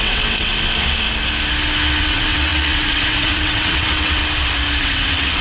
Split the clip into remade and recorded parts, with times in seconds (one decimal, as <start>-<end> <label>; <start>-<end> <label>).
0.0-0.5 remade; 0.5-2.0 recorded; 2.0-4.2 remade; 4.2-4.8 recorded; 4.8-5.4 remade